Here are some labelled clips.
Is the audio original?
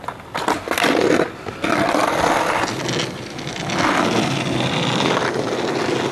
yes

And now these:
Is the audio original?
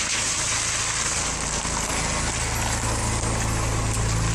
yes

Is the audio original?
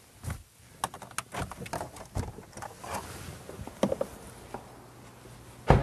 yes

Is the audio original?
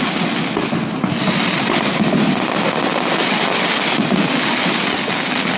yes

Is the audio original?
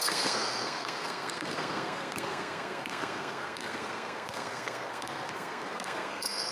no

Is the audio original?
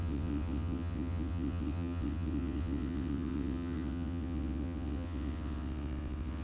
no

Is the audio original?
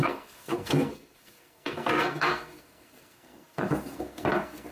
no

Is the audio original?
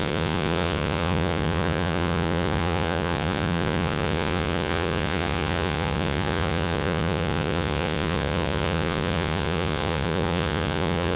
no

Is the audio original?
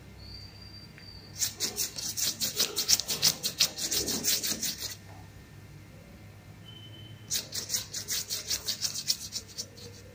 yes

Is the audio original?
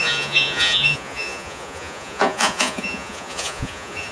no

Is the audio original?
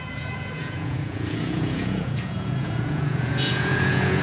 no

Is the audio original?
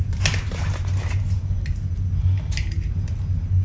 yes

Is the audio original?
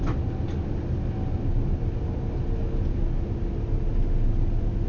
yes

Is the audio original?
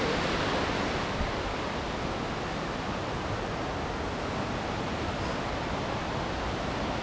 yes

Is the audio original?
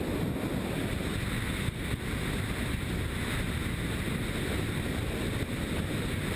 yes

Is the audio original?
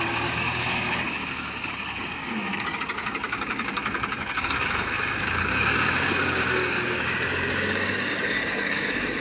no